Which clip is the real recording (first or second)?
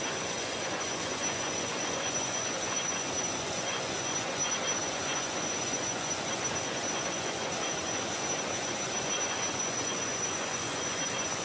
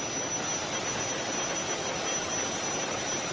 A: second